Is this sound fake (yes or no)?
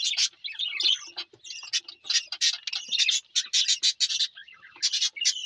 no